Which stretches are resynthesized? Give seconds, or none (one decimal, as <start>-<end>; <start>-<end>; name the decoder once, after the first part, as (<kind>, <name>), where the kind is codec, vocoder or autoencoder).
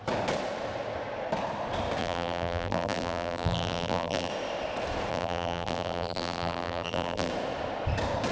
2.0-4.3 (vocoder, BigVGAN v2); 5.1-7.3